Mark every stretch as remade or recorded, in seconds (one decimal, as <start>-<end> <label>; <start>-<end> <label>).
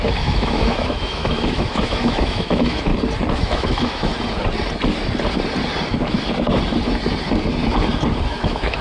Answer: 0.0-2.9 remade; 2.9-3.4 recorded; 3.4-4.1 remade; 4.1-8.3 recorded; 8.3-8.8 remade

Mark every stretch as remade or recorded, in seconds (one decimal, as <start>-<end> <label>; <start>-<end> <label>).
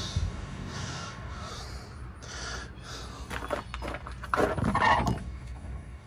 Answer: 0.0-1.5 remade; 1.5-5.2 recorded; 5.2-6.1 remade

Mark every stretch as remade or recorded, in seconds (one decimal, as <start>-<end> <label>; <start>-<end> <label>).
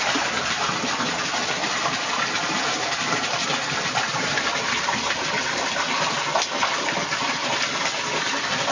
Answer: 0.0-1.7 recorded; 1.7-5.3 remade; 5.3-8.7 recorded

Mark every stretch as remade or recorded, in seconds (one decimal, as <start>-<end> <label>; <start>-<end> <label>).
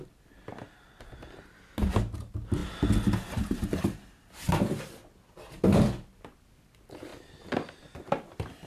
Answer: 0.0-8.7 recorded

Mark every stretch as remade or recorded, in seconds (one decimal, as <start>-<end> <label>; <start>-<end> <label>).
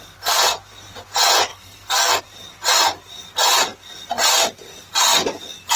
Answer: 0.0-1.5 recorded; 1.5-2.2 remade; 2.2-5.8 recorded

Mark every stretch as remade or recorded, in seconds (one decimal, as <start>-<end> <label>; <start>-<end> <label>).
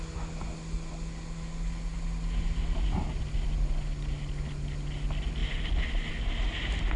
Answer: 0.0-7.0 recorded